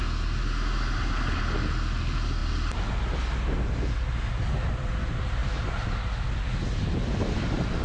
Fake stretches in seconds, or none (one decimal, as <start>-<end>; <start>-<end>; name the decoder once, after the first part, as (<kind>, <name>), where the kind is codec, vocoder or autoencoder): none